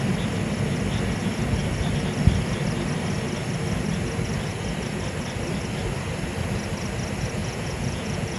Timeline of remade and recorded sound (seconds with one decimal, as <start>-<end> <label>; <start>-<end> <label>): 0.0-7.4 recorded; 7.4-8.4 remade